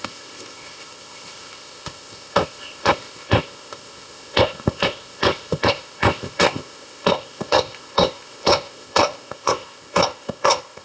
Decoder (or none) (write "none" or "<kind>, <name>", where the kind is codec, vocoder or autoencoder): codec, ZipCodec